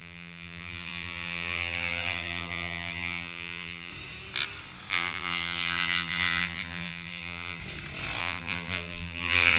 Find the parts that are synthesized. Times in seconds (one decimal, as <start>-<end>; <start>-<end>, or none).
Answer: 0.0-3.9; 4.9-7.6; 8.2-9.6